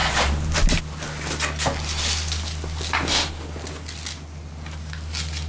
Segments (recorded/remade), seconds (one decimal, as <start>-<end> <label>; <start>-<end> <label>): 0.0-5.5 recorded